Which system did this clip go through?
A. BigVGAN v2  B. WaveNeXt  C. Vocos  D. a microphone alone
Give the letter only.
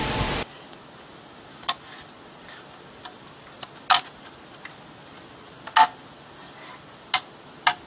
D